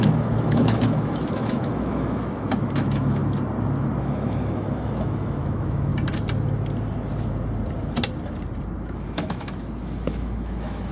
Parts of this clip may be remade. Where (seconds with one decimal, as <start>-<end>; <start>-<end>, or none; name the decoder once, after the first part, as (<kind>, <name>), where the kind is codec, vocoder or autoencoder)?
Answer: 0.0-3.2 (autoencoder, DAC-VAE); 4.0-5.9; 8.8-10.9